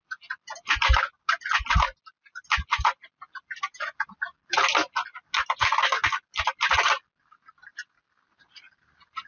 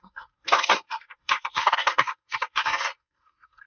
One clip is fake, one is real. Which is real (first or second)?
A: first